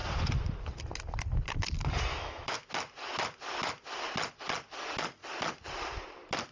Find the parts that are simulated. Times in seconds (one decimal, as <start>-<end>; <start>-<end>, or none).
2.1-2.7